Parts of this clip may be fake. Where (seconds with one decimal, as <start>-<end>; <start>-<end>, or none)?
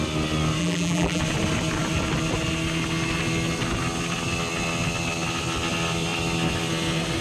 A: 0.6-1.2